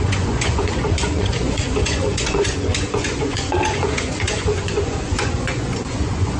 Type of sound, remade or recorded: remade